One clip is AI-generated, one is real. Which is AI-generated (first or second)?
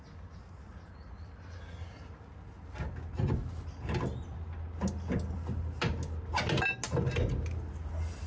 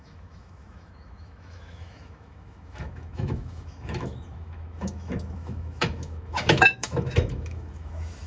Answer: second